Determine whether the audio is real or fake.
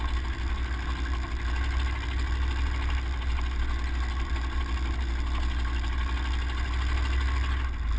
real